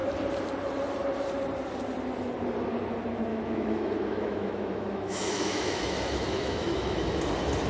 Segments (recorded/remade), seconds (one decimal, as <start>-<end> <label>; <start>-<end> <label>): 0.0-3.3 recorded; 3.3-7.2 remade; 7.2-7.7 recorded